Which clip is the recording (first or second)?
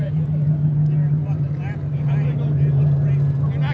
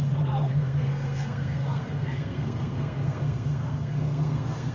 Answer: first